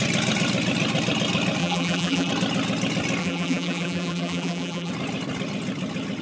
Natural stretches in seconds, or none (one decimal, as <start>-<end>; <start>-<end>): 0.0-1.6; 2.3-3.2; 4.9-6.2